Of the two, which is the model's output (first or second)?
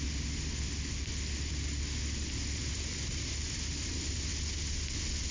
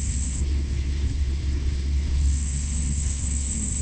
second